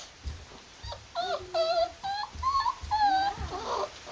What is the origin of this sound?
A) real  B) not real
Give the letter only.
B